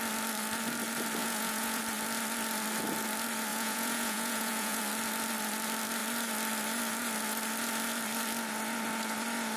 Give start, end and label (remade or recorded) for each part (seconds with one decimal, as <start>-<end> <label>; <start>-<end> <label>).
0.0-1.2 recorded; 1.2-1.8 remade; 1.8-3.5 recorded; 3.5-4.8 remade; 4.8-9.6 recorded